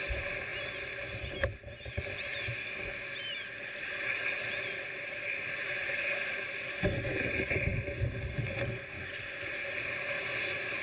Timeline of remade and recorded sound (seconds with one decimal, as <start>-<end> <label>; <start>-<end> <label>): 0.0-10.8 recorded